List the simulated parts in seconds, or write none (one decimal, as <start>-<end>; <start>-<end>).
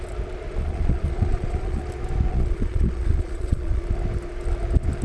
0.6-1.8; 2.3-3.8